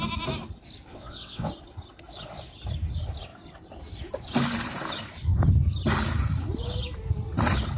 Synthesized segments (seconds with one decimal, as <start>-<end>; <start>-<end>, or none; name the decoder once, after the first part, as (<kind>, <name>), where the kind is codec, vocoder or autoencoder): 0.9-1.5 (vocoder, WaveNeXt)